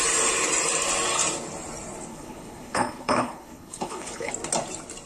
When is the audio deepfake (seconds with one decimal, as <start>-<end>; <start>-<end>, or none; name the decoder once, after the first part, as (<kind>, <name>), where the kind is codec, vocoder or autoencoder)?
2.1-4.3 (codec, HILCodec)